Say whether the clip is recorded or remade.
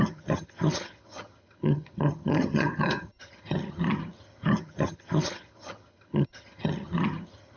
remade